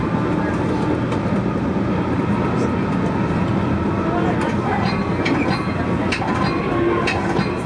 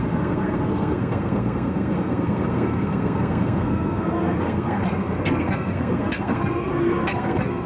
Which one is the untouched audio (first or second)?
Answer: first